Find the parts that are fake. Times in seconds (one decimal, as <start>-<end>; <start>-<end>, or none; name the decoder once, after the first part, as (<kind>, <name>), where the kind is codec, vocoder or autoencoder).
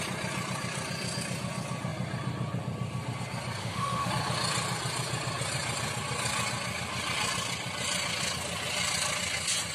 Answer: 3.6-4.1 (autoencoder, DAC-VAE)